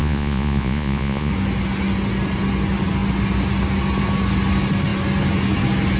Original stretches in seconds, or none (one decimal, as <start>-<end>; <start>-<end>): 1.3-6.0